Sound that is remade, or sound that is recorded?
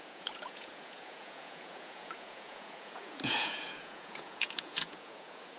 remade